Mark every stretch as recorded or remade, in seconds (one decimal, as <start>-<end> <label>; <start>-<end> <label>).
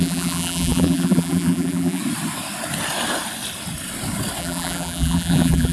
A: 0.0-2.0 remade; 2.0-4.4 recorded; 4.4-5.7 remade